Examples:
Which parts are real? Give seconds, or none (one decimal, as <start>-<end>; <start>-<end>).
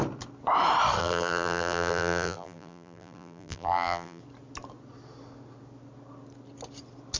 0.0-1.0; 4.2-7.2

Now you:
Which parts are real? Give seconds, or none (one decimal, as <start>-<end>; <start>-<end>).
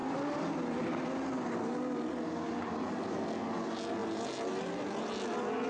0.0-5.7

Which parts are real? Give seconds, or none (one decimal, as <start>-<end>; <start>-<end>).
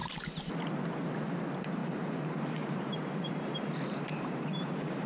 0.5-1.8